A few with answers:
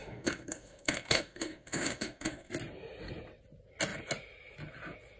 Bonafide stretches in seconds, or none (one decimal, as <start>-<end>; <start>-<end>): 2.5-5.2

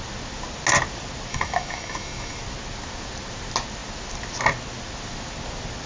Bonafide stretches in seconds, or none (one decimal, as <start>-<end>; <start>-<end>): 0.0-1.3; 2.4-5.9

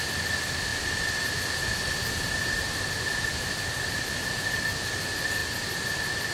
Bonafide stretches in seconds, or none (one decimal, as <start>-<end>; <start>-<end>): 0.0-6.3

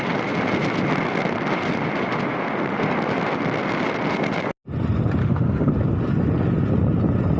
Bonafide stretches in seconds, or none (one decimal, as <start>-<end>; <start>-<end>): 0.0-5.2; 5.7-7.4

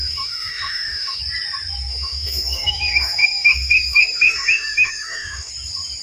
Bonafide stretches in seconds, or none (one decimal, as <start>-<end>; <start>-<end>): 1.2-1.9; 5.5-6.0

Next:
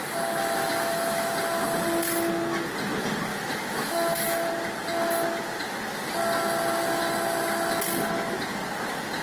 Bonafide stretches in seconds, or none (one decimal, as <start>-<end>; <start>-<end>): 0.0-0.6; 1.3-3.3; 4.5-9.2

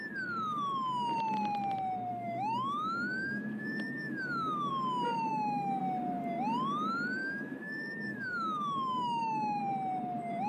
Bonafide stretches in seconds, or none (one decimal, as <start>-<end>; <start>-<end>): 0.0-2.1; 4.7-5.3; 5.8-7.2; 9.6-10.5